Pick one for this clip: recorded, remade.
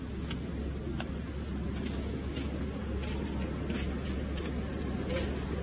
recorded